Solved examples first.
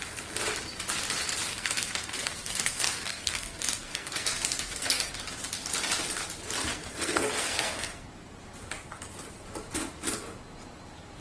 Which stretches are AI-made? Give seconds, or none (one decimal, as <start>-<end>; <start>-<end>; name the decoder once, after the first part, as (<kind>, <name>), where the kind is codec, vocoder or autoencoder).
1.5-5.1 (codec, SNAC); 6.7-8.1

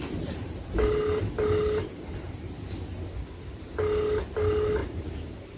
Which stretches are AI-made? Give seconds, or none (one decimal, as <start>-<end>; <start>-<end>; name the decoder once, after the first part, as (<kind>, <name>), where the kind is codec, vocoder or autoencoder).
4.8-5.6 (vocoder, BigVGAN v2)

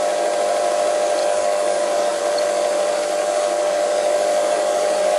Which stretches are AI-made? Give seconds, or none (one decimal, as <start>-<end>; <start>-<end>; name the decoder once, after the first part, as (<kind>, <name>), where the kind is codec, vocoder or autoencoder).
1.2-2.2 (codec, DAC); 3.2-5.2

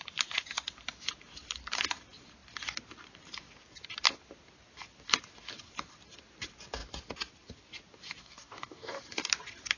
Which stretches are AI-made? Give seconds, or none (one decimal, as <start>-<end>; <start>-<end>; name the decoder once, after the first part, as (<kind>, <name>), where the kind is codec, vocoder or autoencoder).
8.2-9.0 (codec, DAC)